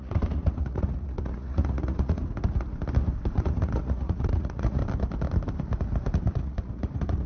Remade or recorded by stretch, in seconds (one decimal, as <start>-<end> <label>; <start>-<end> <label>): 0.0-2.2 remade; 2.2-3.3 recorded; 3.3-4.8 remade; 4.8-6.3 recorded; 6.3-7.3 remade